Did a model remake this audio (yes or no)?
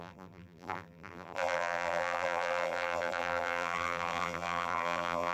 yes